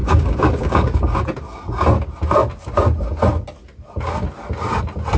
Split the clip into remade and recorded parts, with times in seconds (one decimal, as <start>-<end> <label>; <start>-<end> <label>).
0.0-1.2 remade; 1.2-5.2 recorded